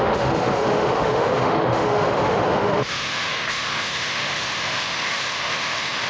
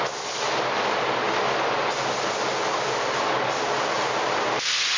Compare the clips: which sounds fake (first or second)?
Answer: first